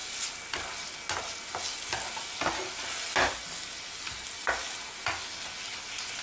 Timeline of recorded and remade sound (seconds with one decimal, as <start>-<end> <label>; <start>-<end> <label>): 0.0-6.2 recorded